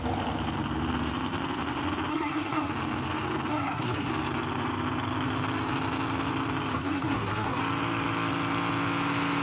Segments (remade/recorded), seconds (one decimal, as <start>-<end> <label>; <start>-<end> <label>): 0.0-2.1 recorded; 2.1-2.7 remade; 2.7-3.5 recorded; 3.5-4.1 remade; 4.1-6.7 recorded; 6.7-7.6 remade; 7.6-9.4 recorded